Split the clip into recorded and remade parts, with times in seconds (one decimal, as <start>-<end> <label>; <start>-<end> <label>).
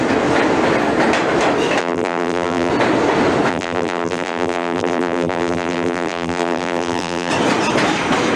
0.0-1.8 recorded; 1.8-2.7 remade; 2.7-3.5 recorded; 3.5-7.3 remade; 7.3-8.4 recorded